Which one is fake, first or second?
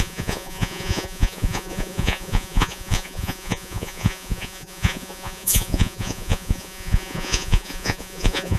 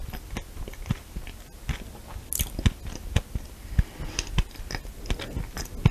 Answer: first